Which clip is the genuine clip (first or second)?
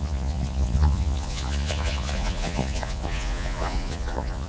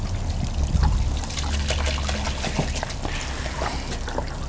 second